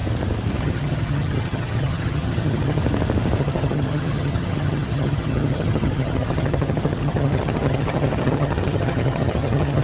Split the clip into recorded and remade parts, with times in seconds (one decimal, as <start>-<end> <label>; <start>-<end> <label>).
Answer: 0.0-0.6 recorded; 0.6-2.8 remade; 2.8-3.4 recorded; 3.4-9.8 remade